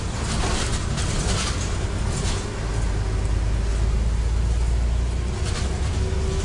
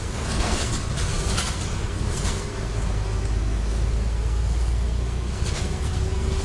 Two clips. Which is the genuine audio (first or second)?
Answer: first